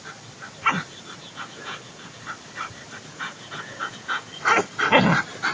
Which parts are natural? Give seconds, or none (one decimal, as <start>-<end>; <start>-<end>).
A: 0.0-1.2; 2.2-3.1; 4.3-5.5